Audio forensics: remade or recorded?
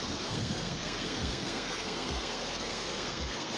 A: remade